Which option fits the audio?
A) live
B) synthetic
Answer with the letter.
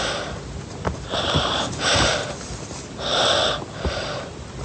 A